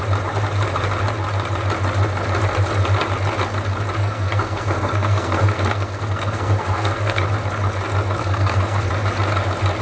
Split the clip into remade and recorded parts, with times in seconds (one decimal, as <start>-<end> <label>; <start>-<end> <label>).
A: 0.0-4.0 recorded; 4.0-7.3 remade; 7.3-8.2 recorded; 8.2-8.9 remade; 8.9-9.8 recorded